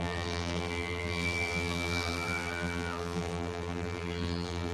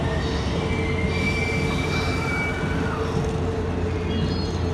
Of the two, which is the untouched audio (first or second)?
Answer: second